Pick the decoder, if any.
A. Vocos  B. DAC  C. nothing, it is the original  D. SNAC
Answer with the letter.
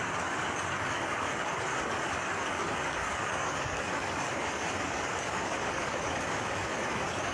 B